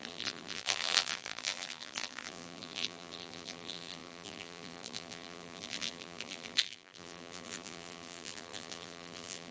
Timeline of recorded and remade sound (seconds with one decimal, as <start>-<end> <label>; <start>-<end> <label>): 0.0-9.5 remade